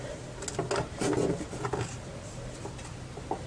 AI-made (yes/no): no